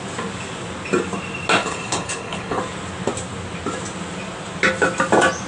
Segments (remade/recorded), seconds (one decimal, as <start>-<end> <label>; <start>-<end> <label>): 0.0-1.6 recorded; 1.6-2.6 remade; 2.6-5.5 recorded